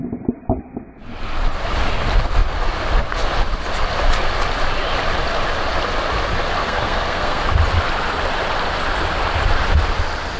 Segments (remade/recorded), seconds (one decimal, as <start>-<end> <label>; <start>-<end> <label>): 0.0-6.6 recorded; 6.6-7.4 remade; 7.4-10.4 recorded